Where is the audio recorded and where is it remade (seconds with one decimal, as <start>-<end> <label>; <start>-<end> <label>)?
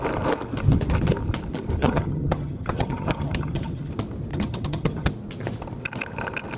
0.0-1.8 recorded; 1.8-3.9 remade; 3.9-4.3 recorded; 4.3-5.1 remade; 5.1-6.6 recorded